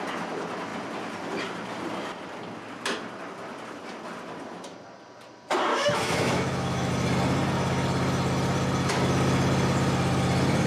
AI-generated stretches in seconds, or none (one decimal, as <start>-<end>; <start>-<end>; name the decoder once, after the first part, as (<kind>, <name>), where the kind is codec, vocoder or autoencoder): 5.7-6.9 (autoencoder, DAC-VAE)